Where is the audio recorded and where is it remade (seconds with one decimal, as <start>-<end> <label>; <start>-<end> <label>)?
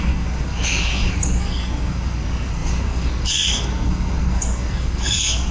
0.0-5.5 remade